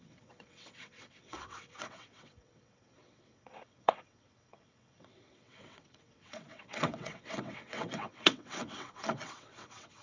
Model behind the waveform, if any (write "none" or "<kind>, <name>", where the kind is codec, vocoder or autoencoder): vocoder, WaveNeXt